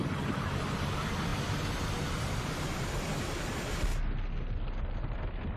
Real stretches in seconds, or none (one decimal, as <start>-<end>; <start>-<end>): 0.0-5.6

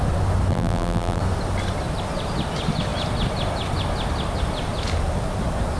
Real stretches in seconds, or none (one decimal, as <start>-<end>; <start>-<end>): 0.0-0.5; 1.2-5.8

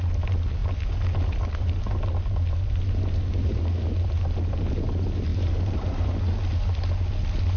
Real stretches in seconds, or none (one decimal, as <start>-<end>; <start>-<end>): 0.0-5.3; 6.1-7.6

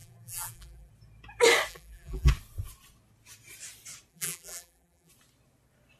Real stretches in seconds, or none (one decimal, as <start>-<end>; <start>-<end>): 0.9-1.7; 2.3-4.1; 5.1-6.0

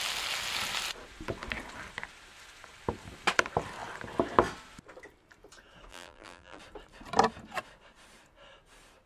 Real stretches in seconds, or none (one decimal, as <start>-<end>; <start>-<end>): 0.0-5.9; 6.6-9.1

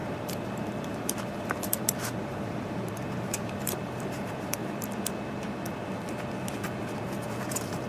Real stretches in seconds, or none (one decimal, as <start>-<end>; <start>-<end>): 4.7-7.9

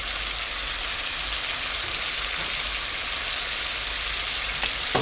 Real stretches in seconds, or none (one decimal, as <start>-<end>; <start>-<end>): 0.0-5.0

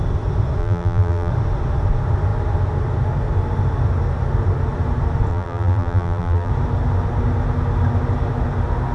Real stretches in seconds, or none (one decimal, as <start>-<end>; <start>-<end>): 0.0-0.6; 1.3-5.3; 6.5-8.9